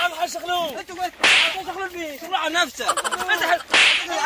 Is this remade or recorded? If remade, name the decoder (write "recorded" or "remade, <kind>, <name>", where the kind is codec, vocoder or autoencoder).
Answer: recorded